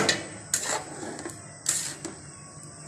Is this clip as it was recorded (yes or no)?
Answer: yes